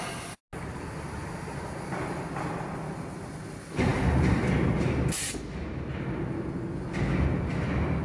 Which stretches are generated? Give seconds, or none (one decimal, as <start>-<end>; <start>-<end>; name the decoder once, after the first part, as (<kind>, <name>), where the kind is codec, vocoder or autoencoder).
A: 1.2-3.4 (vocoder, BigVGAN v2)